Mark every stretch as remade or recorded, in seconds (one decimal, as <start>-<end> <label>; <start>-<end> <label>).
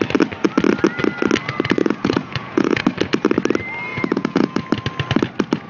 0.0-1.8 recorded; 1.8-2.8 remade; 2.8-3.9 recorded; 3.9-4.6 remade; 4.6-5.7 recorded